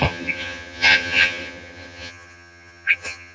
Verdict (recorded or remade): remade